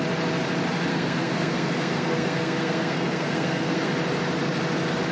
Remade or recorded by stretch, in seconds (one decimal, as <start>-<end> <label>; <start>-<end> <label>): 0.0-0.9 recorded; 0.9-3.9 remade; 3.9-5.1 recorded